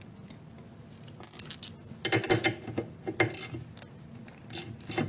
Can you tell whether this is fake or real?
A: real